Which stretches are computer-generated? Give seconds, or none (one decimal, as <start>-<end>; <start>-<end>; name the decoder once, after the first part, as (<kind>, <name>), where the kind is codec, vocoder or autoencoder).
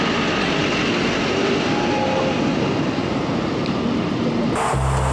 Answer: none